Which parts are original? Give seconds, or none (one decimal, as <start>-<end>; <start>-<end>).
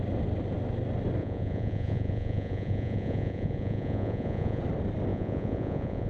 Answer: 0.0-1.2; 4.6-5.1